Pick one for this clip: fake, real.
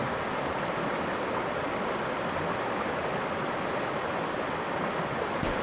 real